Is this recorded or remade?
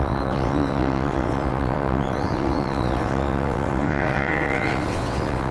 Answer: remade